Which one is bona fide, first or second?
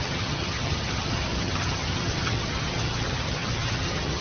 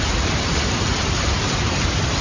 second